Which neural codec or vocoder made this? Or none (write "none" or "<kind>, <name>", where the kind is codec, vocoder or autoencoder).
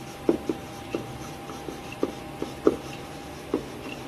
vocoder, BigVGAN v2